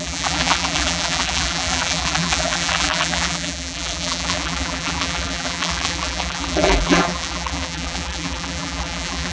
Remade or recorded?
remade